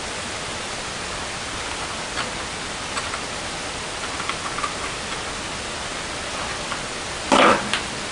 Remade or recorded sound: recorded